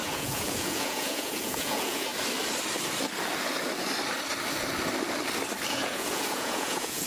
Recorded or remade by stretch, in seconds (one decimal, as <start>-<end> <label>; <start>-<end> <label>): 0.0-2.1 remade; 2.1-5.7 recorded; 5.7-7.1 remade